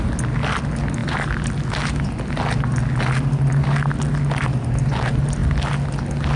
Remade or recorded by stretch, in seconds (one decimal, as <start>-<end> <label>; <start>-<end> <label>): 0.0-6.4 recorded